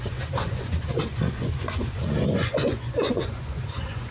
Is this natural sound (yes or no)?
no